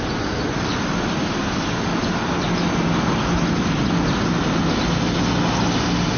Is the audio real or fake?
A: real